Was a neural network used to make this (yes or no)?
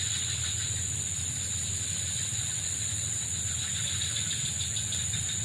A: no